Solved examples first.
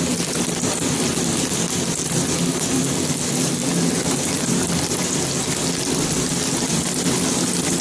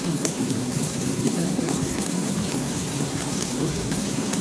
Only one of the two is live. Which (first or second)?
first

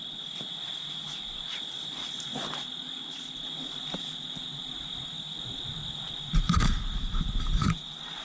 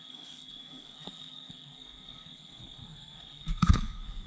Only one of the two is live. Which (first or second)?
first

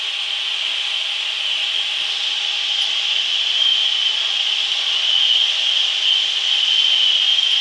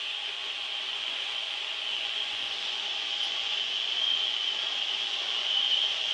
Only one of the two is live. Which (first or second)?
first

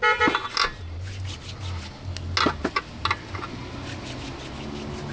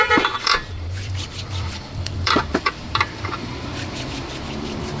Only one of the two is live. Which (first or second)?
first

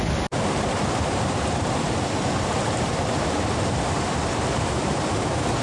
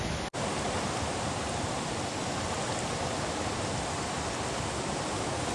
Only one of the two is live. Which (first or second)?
second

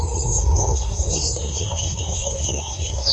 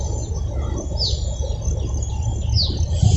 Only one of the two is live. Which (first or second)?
second